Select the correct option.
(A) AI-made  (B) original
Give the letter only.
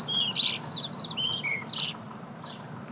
B